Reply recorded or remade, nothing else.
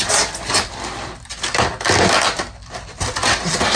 remade